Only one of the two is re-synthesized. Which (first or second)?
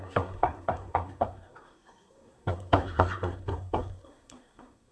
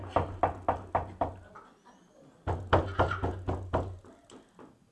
first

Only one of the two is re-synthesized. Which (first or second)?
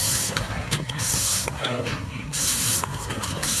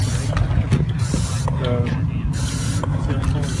first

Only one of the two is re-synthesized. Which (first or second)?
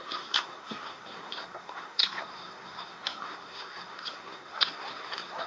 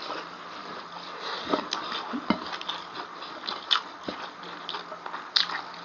first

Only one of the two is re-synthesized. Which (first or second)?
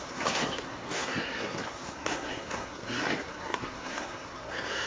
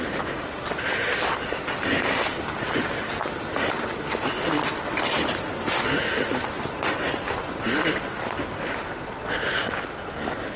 first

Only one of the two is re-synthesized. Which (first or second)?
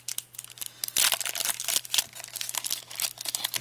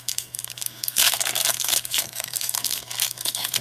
second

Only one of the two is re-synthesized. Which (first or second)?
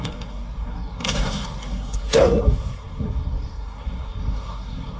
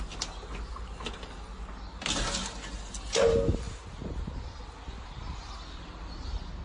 first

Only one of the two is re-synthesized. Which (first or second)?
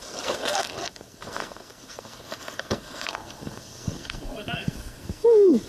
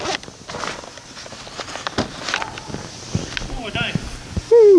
first